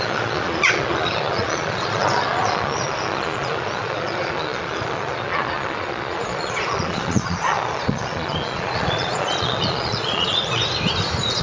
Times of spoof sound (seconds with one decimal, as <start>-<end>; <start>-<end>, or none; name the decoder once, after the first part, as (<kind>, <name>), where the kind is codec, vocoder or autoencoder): 0.0-10.6 (vocoder, Vocos)

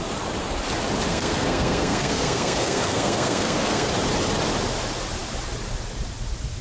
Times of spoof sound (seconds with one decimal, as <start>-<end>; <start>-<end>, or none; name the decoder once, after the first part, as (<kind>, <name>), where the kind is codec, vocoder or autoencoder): 1.1-3.9 (codec, SNAC)